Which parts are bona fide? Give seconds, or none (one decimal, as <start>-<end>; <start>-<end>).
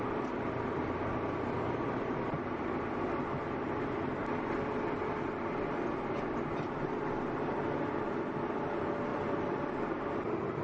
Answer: 0.0-9.1